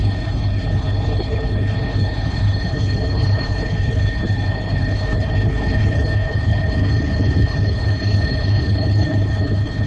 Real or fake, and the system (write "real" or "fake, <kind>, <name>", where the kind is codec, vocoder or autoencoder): fake, codec, HILCodec